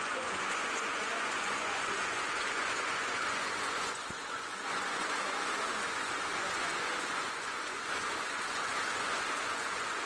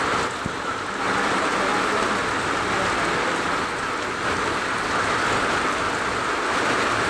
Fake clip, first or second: first